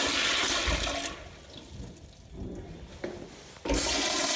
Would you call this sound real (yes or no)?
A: yes